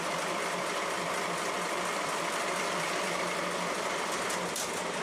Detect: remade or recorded remade